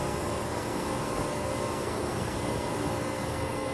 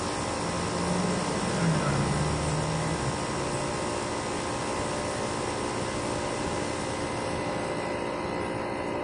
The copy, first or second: first